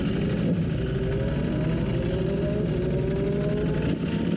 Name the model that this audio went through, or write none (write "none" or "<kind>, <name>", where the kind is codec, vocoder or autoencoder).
none